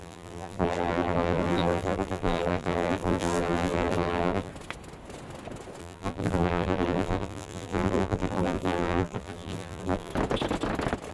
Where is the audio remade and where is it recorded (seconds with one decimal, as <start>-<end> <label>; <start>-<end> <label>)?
0.0-4.5 remade; 4.5-5.8 recorded; 5.8-10.1 remade; 10.1-11.1 recorded